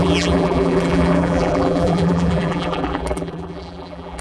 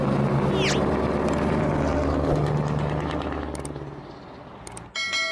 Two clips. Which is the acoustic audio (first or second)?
second